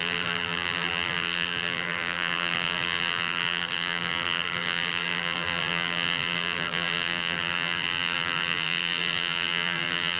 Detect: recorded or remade remade